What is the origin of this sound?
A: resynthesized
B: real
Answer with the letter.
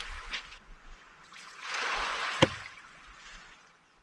A